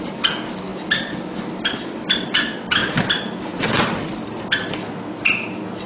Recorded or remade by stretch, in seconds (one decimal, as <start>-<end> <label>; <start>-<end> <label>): 0.0-5.9 recorded